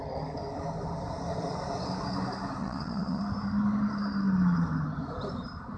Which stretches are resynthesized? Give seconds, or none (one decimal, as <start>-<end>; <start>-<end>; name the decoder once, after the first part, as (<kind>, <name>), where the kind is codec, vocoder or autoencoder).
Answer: 2.6-3.2 (vocoder, Vocos)